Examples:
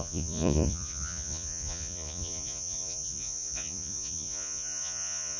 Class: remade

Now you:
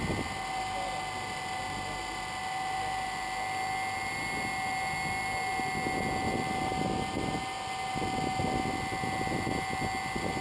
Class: recorded